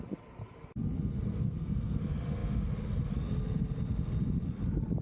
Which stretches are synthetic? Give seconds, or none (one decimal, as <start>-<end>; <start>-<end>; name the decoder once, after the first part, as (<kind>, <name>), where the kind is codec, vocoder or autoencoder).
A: 1.3-2.0 (codec, SNAC)